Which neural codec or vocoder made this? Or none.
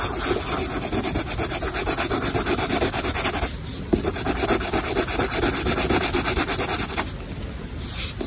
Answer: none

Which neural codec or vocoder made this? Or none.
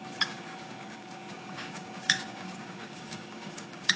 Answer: codec, DAC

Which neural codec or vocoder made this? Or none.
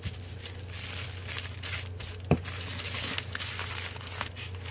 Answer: none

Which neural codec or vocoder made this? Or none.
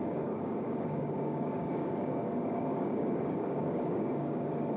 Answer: codec, DAC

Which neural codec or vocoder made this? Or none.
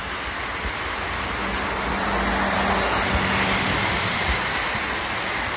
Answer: none